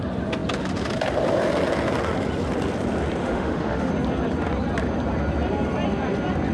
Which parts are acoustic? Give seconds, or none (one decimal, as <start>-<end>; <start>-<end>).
0.0-3.2; 3.9-6.5